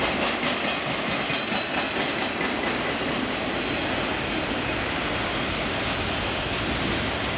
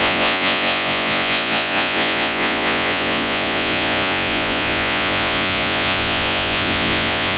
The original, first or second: first